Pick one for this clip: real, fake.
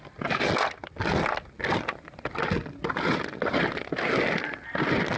real